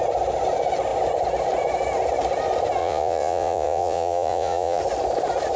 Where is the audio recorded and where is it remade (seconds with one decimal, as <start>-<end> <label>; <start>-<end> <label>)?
0.0-2.8 recorded; 2.8-4.8 remade; 4.8-5.6 recorded